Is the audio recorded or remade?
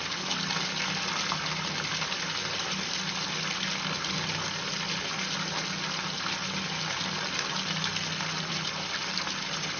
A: recorded